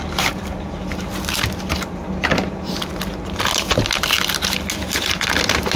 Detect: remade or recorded recorded